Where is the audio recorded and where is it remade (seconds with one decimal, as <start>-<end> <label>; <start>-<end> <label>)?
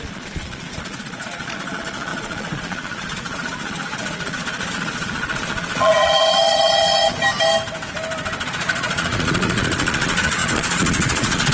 0.0-7.2 remade; 7.2-8.5 recorded; 8.5-11.5 remade